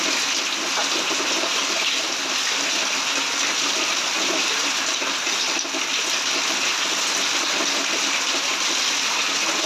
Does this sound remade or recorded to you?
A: recorded